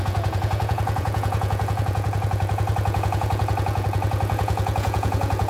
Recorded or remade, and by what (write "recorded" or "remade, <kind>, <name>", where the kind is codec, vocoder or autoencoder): remade, vocoder, Vocos